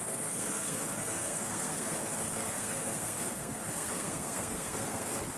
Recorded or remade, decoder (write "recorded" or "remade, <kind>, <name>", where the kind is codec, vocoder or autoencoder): remade, codec, SNAC